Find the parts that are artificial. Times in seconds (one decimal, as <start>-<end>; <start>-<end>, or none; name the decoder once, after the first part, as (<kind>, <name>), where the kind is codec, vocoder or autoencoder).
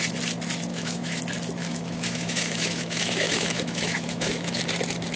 0.7-1.2 (autoencoder, DAC-VAE); 1.6-4.6